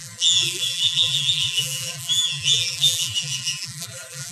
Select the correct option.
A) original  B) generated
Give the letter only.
B